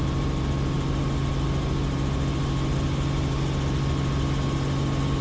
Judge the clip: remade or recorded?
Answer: recorded